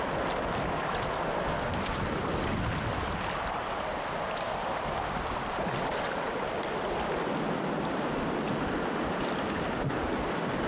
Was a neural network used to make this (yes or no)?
no